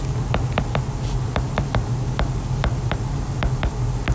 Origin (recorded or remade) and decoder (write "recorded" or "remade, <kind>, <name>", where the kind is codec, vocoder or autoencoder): recorded